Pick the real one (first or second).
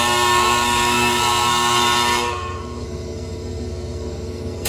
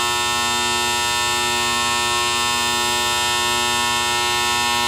second